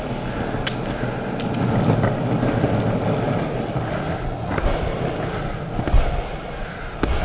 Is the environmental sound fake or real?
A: real